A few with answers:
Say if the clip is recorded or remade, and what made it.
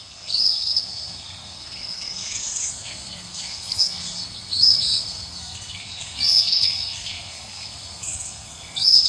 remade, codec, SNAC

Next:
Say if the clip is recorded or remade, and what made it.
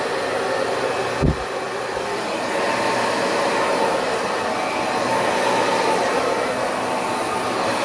recorded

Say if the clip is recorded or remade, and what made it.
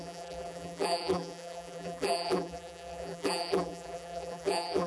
remade, vocoder, BigVGAN v2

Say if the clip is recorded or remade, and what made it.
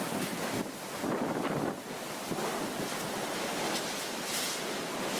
recorded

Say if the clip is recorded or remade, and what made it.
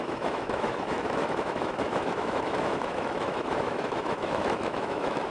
remade, autoencoder, DAC-VAE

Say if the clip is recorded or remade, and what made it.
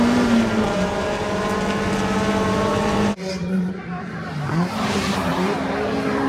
remade, vocoder, BigVGAN v2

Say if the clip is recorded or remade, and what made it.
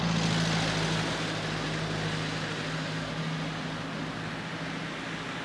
recorded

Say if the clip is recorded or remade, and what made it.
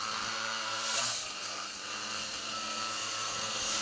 remade, codec, SNAC